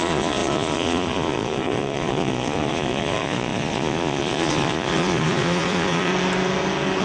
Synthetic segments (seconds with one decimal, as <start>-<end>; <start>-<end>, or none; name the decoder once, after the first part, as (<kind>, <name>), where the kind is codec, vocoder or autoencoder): 0.0-6.1 (vocoder, Vocos)